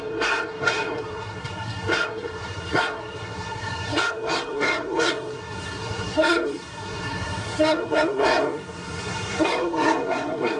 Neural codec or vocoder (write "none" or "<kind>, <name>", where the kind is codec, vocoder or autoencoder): codec, SNAC